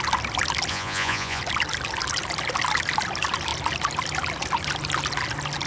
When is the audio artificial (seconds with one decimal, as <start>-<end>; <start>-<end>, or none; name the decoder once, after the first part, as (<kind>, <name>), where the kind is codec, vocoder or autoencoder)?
0.7-1.4 (vocoder, Vocos)